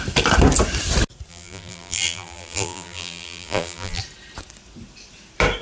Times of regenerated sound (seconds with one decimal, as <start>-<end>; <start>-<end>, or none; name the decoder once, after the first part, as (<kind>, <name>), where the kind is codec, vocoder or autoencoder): 1.3-4.0 (vocoder, BigVGAN v2)